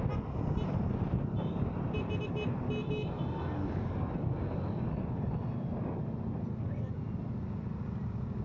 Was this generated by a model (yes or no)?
no